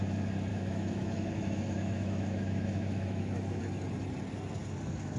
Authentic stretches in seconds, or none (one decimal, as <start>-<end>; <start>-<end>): 0.0-0.5; 3.6-5.2